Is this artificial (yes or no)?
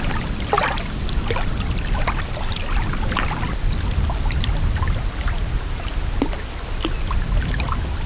no